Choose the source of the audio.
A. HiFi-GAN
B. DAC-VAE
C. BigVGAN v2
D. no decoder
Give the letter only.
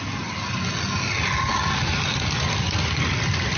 D